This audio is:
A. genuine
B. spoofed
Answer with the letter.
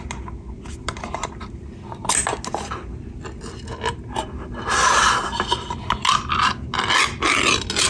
A